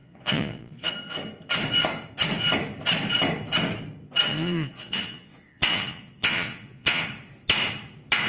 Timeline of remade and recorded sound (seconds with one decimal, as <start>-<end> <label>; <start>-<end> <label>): 0.0-0.9 remade; 0.9-4.3 recorded; 4.3-7.0 remade; 7.0-8.3 recorded